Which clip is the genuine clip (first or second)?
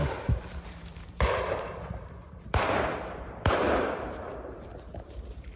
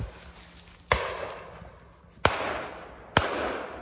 second